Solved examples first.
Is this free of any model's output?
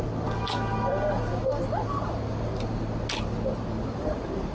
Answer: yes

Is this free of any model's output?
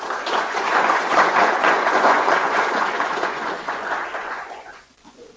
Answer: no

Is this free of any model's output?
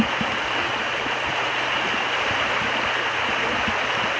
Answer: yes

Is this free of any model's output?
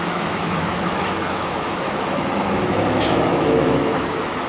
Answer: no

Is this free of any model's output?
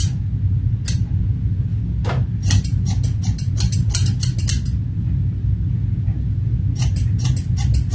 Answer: yes